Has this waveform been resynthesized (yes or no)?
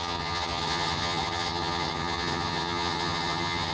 yes